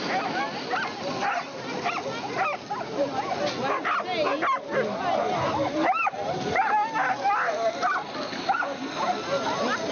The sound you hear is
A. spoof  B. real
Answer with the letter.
B